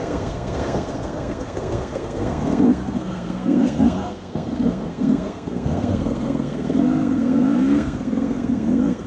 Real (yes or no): no